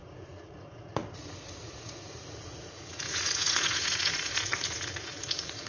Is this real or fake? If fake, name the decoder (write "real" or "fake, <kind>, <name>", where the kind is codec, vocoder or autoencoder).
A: fake, vocoder, Vocos